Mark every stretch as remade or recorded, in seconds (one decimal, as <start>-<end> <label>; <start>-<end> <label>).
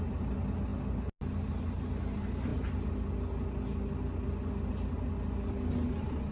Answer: 0.0-6.3 recorded